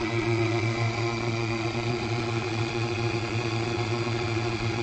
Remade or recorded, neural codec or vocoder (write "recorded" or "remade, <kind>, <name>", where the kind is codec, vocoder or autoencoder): remade, vocoder, Vocos